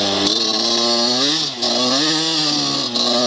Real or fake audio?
real